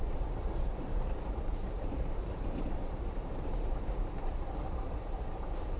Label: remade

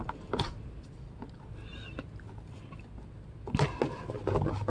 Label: recorded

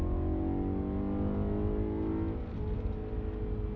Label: recorded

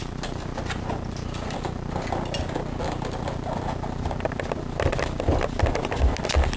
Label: recorded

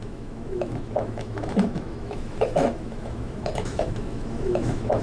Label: remade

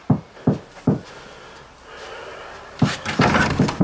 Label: recorded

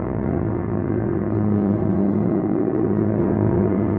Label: remade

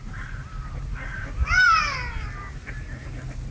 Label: recorded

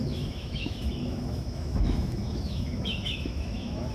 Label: remade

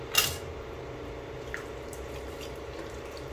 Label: recorded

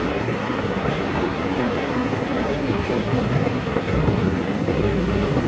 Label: remade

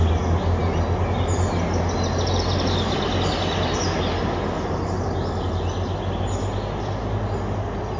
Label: recorded